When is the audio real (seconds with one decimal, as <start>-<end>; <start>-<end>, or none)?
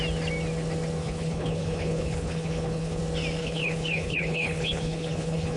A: 0.0-1.0; 3.0-3.4